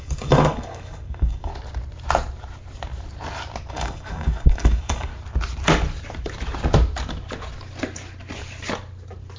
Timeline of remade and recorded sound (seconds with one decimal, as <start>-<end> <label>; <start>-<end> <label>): 0.0-1.5 remade; 1.5-3.7 recorded; 3.7-5.1 remade; 5.1-9.4 recorded